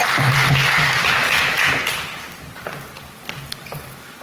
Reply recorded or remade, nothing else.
recorded